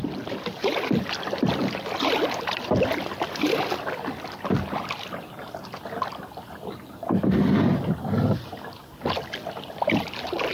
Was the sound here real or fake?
real